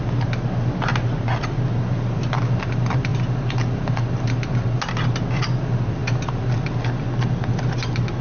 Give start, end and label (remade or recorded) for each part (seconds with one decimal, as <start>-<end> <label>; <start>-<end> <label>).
0.0-8.2 recorded